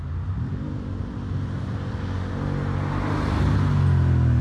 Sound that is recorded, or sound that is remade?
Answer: recorded